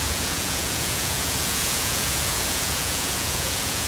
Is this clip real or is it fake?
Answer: fake